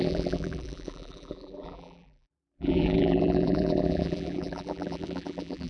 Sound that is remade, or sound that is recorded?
remade